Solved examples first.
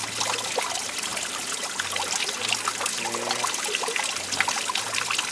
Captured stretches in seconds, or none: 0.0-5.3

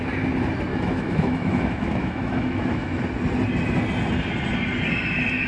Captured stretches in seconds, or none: 0.0-0.7; 3.0-5.5

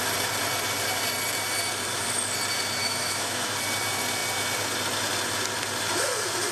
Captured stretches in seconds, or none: 0.0-2.8; 3.5-6.5

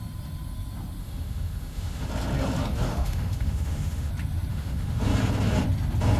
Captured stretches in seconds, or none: 0.0-1.0; 2.1-2.9; 4.1-4.5; 5.0-6.2

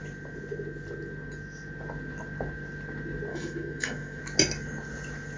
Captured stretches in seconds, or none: 0.0-3.3; 4.2-5.4